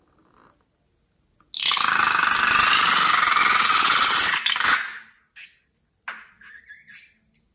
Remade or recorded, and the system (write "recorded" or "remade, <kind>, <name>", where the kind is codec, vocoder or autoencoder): recorded